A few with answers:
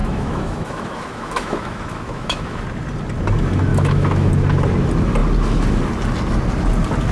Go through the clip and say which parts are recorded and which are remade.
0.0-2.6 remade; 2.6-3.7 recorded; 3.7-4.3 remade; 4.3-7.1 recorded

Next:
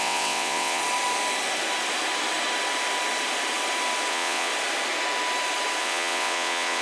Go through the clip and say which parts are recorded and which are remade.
0.0-0.8 remade; 0.8-4.1 recorded; 4.1-4.5 remade; 4.5-5.8 recorded; 5.8-6.8 remade

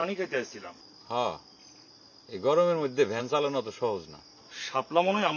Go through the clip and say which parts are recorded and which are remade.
0.0-4.3 recorded; 4.3-5.4 remade

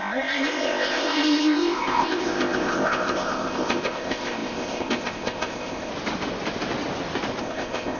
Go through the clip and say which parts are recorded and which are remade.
0.0-5.9 remade; 5.9-7.4 recorded; 7.4-8.0 remade

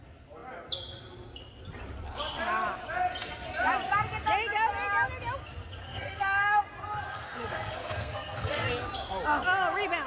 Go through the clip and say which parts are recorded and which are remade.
0.0-5.8 recorded; 5.8-6.6 remade; 6.6-7.1 recorded; 7.1-8.7 remade; 8.7-10.1 recorded